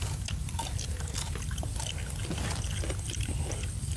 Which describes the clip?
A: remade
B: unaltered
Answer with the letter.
B